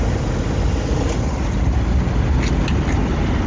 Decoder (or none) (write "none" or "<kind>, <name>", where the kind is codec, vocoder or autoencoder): none